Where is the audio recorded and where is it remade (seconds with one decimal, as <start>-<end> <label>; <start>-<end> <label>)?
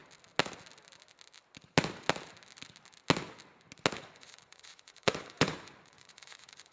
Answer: 0.0-4.0 recorded; 4.0-6.7 remade